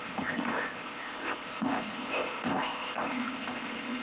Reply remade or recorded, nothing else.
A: remade